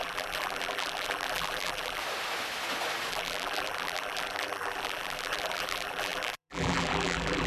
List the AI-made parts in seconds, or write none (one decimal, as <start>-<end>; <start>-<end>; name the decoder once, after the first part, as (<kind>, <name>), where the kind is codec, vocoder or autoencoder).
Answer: 0.0-2.0 (vocoder, BigVGAN v2); 3.1-7.5